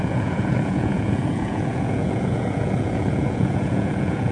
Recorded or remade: remade